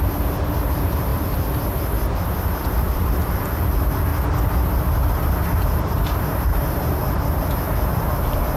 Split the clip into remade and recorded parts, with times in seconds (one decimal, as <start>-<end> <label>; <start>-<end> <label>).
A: 0.0-1.1 remade; 1.1-2.8 recorded; 2.8-4.1 remade; 4.1-5.6 recorded; 5.6-7.0 remade; 7.0-7.5 recorded; 7.5-8.6 remade